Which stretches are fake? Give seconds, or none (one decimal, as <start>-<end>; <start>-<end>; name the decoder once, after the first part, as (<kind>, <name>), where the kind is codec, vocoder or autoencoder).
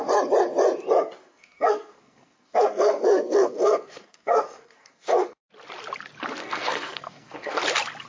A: 1.2-5.4 (codec, SNAC); 6.4-7.6